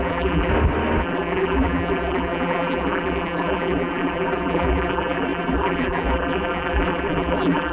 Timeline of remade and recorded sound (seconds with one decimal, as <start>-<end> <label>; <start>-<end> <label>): 0.0-0.5 remade; 0.5-1.0 recorded; 1.0-7.7 remade

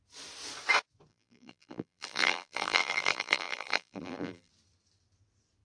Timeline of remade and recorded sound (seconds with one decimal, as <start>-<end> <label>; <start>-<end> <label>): 0.0-1.1 recorded; 1.1-4.5 remade; 4.5-5.6 recorded

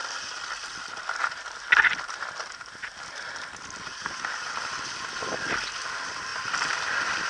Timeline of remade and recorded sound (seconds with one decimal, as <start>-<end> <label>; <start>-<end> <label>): 0.0-6.3 recorded; 6.3-7.3 remade

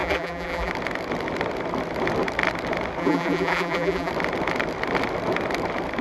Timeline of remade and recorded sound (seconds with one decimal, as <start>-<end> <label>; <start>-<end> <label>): 0.0-0.7 remade; 0.7-3.0 recorded; 3.0-4.1 remade; 4.1-6.0 recorded

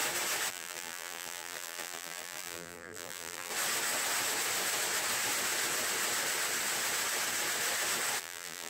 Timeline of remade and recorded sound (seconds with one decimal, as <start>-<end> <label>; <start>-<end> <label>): 0.0-0.5 recorded; 0.5-3.5 remade; 3.5-8.2 recorded; 8.2-8.7 remade

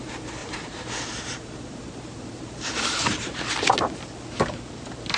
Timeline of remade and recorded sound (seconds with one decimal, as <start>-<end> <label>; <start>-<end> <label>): 0.0-0.4 recorded; 0.4-3.5 remade; 3.5-5.2 recorded

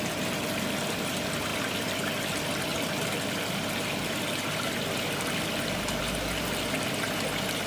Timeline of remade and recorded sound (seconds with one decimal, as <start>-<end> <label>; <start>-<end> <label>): 0.0-7.7 recorded